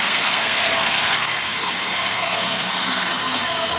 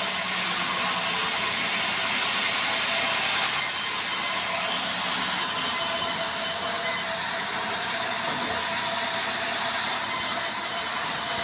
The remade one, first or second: first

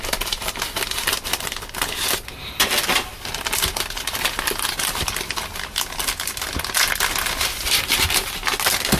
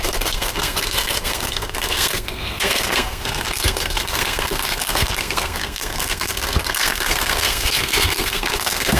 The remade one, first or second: second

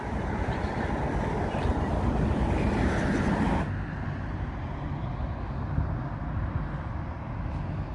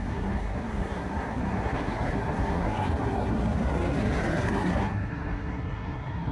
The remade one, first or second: second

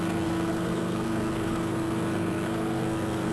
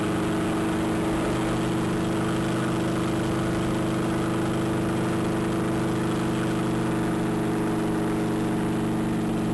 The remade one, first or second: first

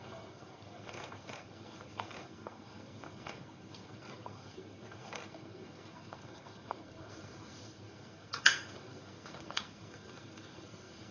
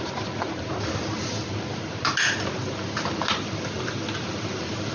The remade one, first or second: first